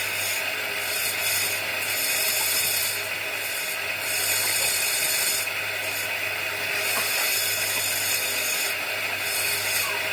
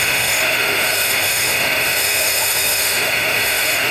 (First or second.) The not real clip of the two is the second